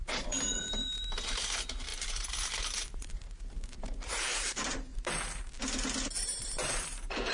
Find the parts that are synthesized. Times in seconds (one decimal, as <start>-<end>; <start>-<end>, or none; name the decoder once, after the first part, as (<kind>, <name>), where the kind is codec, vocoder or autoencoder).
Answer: 0.0-4.9 (vocoder, BigVGAN v2); 6.2-7.3